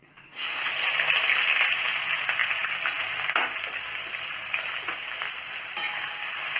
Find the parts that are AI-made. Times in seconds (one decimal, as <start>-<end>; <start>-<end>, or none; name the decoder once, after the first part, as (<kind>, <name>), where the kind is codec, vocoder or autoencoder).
0.0-0.7 (codec, SNAC)